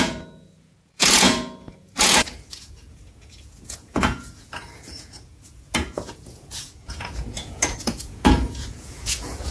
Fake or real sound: fake